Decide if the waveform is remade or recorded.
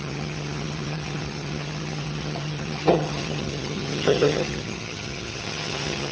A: remade